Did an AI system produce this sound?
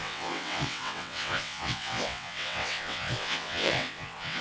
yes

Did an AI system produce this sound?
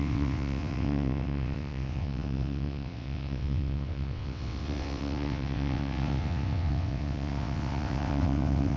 yes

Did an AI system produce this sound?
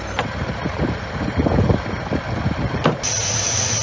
no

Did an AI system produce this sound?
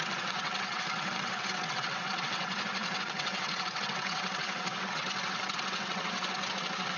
yes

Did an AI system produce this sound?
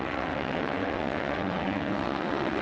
yes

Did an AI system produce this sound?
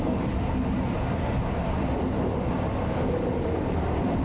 no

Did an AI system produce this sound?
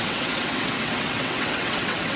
yes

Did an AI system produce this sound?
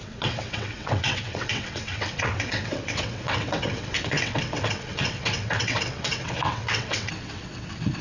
yes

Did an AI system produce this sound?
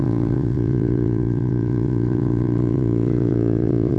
yes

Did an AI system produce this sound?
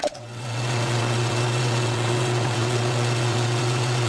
yes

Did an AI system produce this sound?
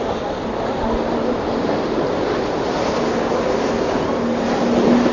no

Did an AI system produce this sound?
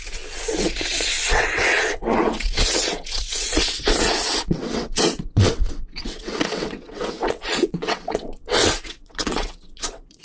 yes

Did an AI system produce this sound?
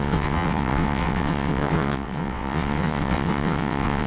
yes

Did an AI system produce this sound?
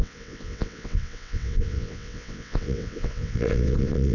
yes